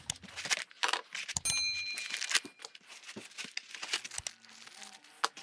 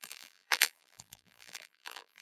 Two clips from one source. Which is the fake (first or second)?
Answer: second